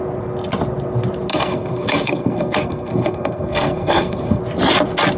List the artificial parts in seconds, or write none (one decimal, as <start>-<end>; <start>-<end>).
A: 1.3-4.4